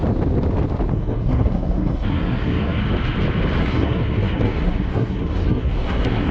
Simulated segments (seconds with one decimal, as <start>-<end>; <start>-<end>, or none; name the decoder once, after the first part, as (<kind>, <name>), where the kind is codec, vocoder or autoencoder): 0.9-2.8 (codec, SNAC); 3.6-6.3